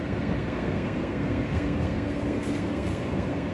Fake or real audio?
fake